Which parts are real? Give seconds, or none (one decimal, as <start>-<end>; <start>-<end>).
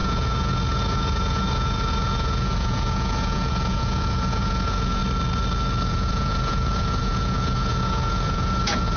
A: 5.0-5.8